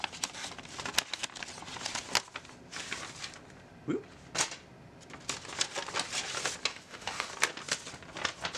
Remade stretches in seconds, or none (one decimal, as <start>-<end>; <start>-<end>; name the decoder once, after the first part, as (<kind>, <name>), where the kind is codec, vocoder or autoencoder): 6.7-7.3 (autoencoder, DAC-VAE)